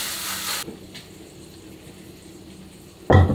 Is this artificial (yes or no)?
no